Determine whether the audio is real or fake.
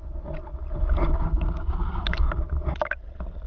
real